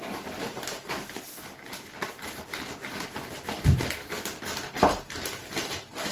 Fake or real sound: real